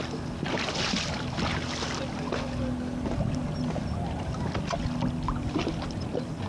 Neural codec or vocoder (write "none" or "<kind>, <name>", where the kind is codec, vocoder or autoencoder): none